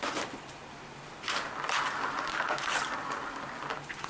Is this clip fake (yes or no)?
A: no